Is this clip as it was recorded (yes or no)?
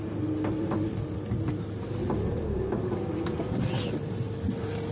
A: yes